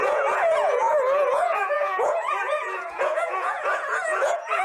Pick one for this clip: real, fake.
fake